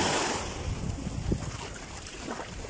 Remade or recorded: recorded